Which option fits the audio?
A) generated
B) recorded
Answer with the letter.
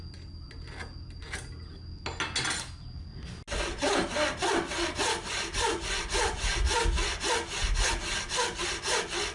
B